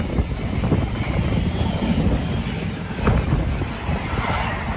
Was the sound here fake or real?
fake